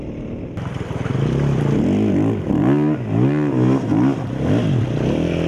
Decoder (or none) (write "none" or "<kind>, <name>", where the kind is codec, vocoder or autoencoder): none